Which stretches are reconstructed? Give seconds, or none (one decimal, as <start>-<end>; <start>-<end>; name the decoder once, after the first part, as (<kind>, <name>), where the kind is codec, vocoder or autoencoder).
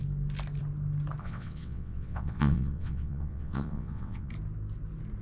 1.2-4.3 (vocoder, WaveNeXt)